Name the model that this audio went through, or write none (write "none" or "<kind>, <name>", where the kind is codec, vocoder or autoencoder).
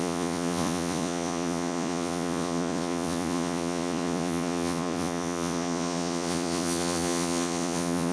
vocoder, Vocos